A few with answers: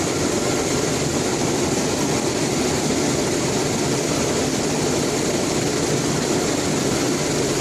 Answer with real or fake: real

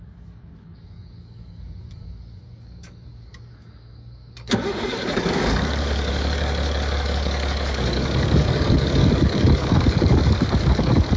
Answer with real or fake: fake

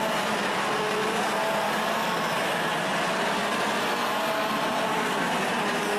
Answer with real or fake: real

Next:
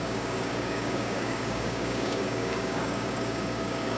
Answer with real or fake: fake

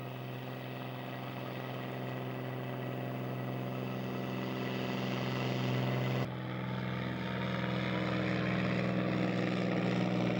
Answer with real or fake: real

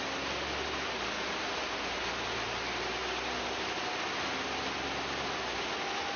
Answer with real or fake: real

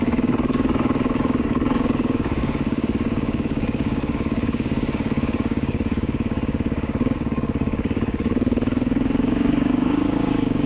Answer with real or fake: fake